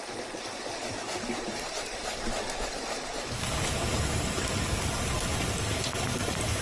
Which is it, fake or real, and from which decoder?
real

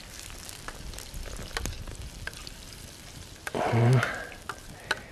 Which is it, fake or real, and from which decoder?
real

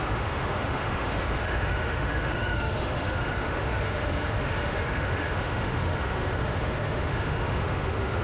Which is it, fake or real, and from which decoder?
fake, autoencoder, DAC-VAE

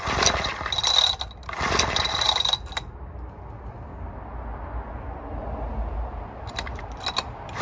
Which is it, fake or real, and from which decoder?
real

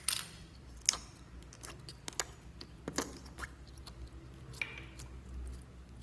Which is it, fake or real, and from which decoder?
real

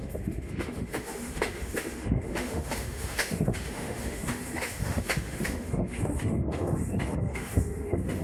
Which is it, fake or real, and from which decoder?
fake, autoencoder, DAC-VAE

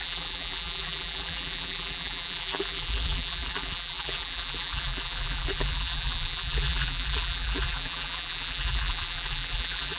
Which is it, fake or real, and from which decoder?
fake, vocoder, BigVGAN v2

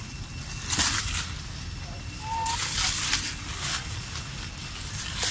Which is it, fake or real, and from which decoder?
real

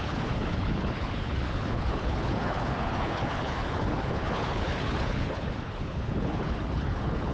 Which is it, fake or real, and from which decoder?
fake, codec, HILCodec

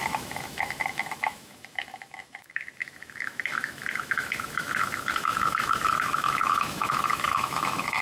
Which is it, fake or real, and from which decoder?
fake, autoencoder, DAC-VAE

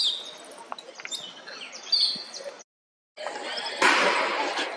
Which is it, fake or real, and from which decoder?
real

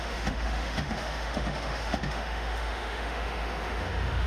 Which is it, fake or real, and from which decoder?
fake, autoencoder, DAC-VAE